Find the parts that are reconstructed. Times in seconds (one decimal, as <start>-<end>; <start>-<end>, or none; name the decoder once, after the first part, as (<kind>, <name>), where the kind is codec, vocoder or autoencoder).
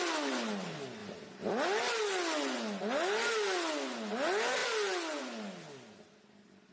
none